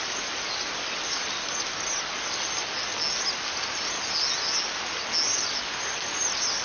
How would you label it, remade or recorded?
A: recorded